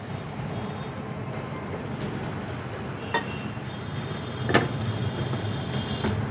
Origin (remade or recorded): recorded